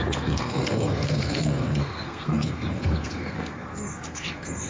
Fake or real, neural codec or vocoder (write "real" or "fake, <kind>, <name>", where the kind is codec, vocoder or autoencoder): fake, codec, SNAC